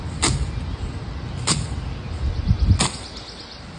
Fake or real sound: real